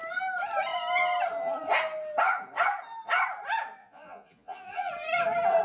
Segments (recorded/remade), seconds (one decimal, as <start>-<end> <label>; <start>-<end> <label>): 0.0-3.8 recorded; 3.8-4.9 remade; 4.9-5.6 recorded